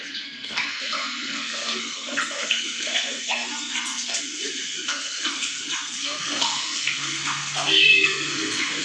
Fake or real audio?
fake